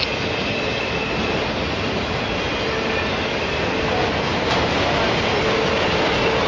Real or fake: real